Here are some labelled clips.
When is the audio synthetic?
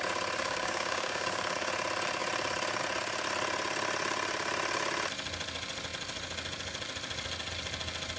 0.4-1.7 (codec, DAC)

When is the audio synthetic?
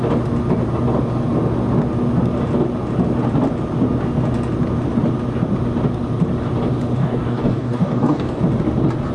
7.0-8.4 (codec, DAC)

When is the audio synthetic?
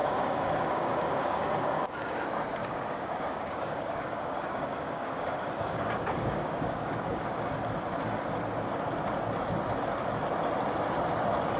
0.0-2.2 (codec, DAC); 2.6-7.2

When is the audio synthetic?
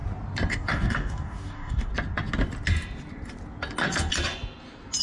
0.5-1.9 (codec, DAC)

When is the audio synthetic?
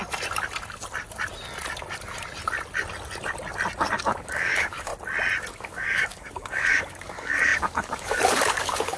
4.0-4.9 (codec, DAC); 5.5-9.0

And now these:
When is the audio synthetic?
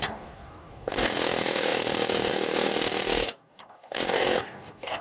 0.0-5.0 (codec, DAC)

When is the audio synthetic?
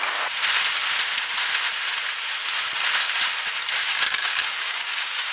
3.8-5.3 (codec, DAC)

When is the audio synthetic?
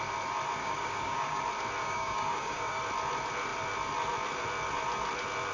0.6-1.4 (codec, DAC); 1.8-2.8